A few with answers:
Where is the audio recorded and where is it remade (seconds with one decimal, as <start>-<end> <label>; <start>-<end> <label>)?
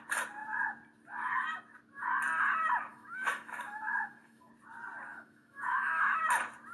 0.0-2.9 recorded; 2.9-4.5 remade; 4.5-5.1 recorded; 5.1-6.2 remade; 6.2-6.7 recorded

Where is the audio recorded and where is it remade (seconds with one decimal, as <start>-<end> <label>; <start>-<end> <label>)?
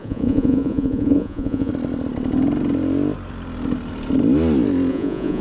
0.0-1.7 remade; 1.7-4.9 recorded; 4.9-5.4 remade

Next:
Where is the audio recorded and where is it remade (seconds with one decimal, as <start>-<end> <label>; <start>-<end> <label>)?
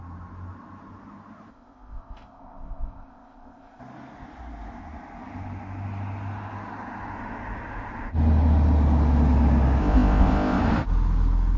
0.0-1.5 recorded; 1.5-3.8 remade; 3.8-9.8 recorded; 9.8-10.6 remade; 10.6-11.6 recorded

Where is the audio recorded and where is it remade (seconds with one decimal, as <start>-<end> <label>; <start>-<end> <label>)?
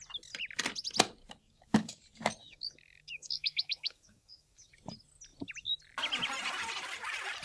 0.0-1.4 recorded; 1.4-2.0 remade; 2.0-2.4 recorded; 2.4-4.7 remade; 4.7-7.4 recorded